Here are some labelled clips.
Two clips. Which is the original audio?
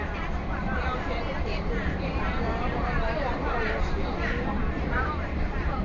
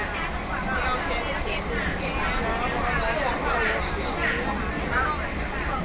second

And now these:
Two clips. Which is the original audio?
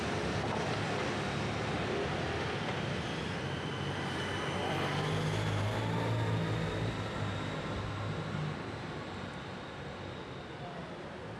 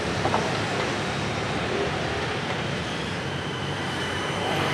first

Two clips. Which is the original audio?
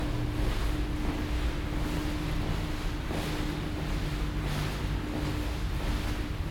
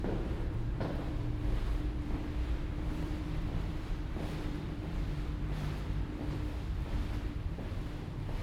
first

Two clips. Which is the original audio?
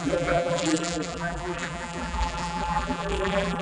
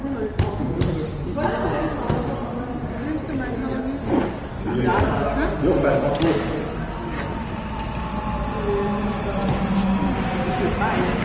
second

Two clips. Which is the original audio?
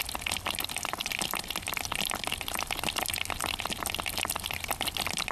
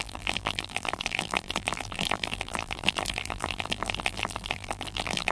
first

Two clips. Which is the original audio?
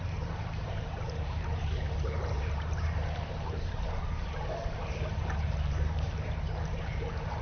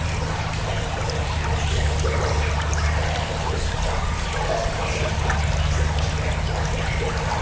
second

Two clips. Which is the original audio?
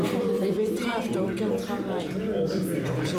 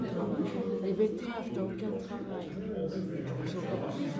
second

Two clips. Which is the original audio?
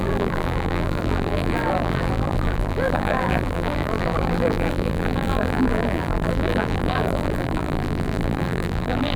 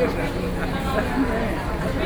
second